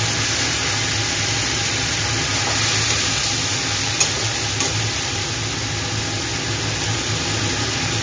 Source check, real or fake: real